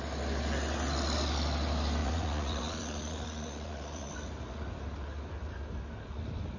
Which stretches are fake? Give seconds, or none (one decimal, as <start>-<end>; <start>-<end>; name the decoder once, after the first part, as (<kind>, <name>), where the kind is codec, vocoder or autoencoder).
2.0-4.1 (vocoder, Vocos)